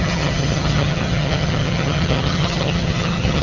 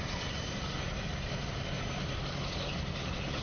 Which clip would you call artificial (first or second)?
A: first